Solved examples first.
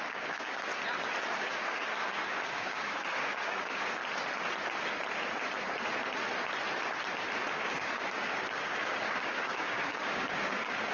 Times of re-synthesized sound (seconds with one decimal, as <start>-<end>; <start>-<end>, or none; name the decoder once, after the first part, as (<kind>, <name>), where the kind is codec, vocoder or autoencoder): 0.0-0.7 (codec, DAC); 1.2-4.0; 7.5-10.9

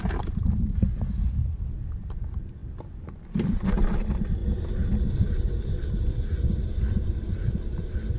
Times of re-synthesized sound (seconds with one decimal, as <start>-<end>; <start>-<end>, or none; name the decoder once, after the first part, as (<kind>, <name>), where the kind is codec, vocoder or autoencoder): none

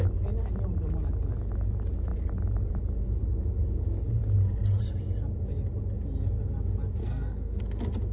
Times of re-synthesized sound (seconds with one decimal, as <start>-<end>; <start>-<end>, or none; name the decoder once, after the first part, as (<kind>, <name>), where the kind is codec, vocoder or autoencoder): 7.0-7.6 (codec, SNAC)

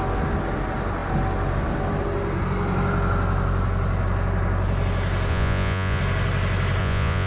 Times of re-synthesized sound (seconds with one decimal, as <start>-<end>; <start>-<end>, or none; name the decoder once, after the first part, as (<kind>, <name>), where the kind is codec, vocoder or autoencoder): 5.3-6.0 (vocoder, Vocos); 6.8-7.3